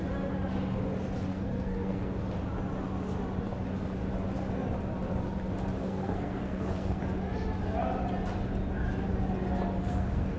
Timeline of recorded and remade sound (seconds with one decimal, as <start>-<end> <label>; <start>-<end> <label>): 0.0-1.3 recorded; 1.3-2.2 remade; 2.2-5.8 recorded; 5.8-7.0 remade; 7.0-9.8 recorded; 9.8-10.4 remade